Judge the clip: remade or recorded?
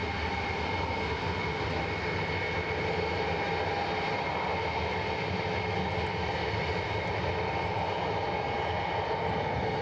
recorded